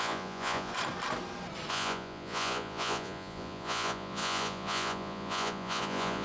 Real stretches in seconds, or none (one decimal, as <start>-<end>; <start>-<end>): 0.7-1.7